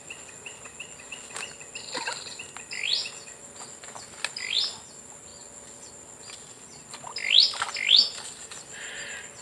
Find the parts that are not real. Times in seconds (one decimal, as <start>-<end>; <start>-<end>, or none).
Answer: none